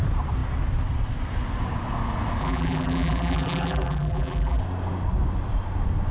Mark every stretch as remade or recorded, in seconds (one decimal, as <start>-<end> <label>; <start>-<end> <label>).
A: 0.0-2.4 recorded; 2.4-4.6 remade; 4.6-6.1 recorded